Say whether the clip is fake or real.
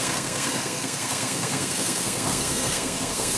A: fake